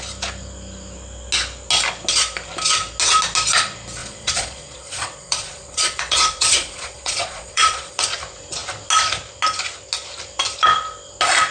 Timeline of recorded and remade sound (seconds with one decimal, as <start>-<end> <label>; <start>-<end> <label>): 0.0-4.0 recorded; 4.0-8.0 remade; 8.0-11.5 recorded